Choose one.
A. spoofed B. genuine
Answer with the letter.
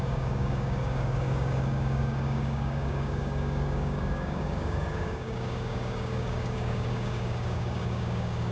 A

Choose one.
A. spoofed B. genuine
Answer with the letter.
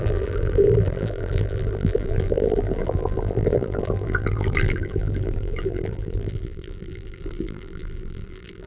A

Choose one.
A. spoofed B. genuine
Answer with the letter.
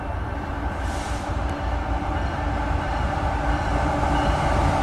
B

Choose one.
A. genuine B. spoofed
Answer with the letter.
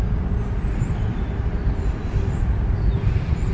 B